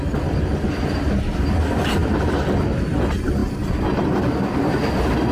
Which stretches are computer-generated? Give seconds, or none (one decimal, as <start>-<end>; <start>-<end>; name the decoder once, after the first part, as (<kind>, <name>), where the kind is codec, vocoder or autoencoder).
none